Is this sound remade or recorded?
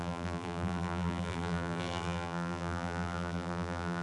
remade